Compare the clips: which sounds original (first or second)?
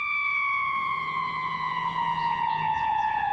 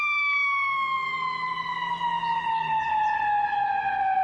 second